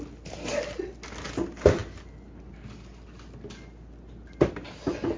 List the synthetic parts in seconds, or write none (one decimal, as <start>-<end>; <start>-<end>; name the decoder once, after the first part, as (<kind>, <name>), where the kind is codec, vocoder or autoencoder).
none